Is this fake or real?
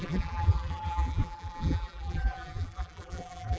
fake